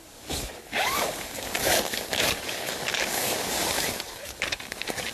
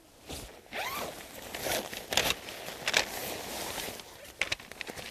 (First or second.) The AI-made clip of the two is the first